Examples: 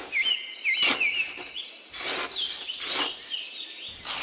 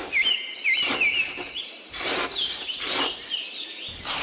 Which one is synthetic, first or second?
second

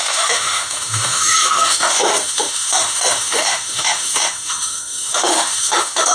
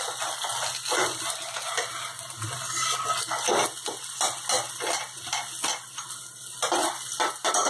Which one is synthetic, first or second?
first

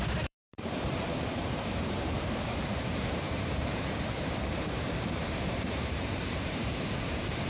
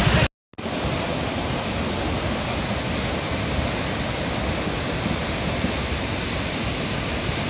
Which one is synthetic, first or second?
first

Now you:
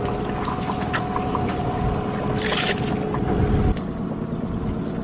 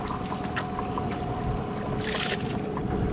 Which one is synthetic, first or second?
second